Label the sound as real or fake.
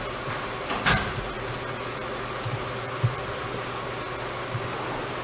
real